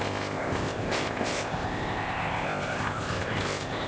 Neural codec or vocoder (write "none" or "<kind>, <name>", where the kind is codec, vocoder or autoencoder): codec, ZipCodec